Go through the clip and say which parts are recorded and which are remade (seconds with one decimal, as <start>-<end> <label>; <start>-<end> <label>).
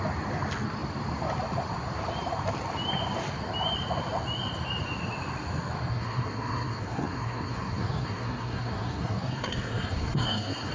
0.0-5.9 recorded; 5.9-10.7 remade